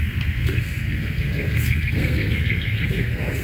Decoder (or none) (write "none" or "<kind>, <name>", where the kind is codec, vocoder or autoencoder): codec, SNAC